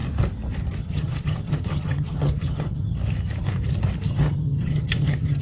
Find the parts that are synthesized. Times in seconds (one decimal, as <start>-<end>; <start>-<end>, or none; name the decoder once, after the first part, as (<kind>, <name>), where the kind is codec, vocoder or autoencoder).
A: 0.8-3.0 (vocoder, HiFi-GAN); 4.1-5.4

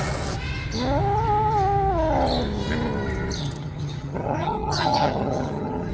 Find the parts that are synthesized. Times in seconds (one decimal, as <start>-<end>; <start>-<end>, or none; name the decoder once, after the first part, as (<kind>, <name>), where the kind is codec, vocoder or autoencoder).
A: 3.4-5.9 (vocoder, HiFi-GAN)

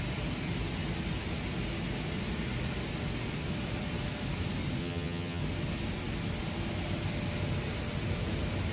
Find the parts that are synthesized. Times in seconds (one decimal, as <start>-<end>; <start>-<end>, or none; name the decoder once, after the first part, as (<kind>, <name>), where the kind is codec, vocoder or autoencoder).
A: 4.8-5.4 (vocoder, HiFi-GAN)

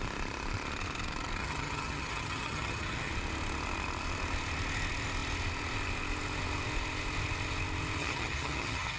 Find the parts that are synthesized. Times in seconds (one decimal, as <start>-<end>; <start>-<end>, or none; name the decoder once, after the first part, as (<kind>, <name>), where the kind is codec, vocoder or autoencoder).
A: 1.4-3.1 (vocoder, HiFi-GAN); 8.0-9.0

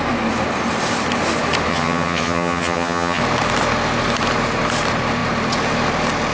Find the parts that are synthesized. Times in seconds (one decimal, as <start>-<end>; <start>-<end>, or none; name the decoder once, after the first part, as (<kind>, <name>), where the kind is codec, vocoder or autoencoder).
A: 1.7-3.2 (vocoder, HiFi-GAN)

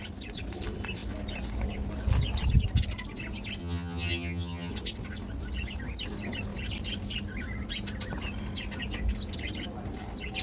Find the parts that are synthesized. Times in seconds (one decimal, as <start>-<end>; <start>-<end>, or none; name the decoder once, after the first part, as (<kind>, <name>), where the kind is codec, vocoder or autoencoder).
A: 3.6-4.7 (vocoder, HiFi-GAN)

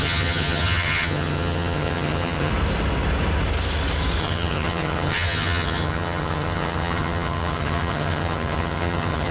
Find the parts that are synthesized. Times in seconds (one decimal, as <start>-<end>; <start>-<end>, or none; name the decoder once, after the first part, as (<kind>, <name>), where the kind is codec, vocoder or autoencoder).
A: 0.0-2.5 (vocoder, HiFi-GAN); 4.2-9.3